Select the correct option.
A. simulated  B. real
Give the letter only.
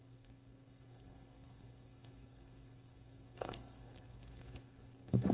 A